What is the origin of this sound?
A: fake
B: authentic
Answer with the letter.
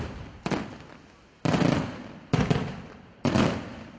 B